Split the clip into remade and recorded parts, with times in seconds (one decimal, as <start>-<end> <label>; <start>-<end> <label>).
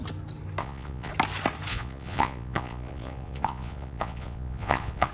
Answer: 0.0-0.6 recorded; 0.6-1.1 remade; 1.1-1.7 recorded; 1.7-5.1 remade